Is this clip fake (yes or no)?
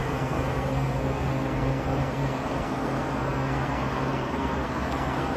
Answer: yes